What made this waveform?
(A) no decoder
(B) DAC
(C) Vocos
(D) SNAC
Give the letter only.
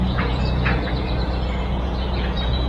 C